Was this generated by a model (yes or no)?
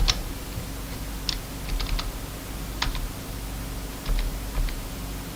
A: no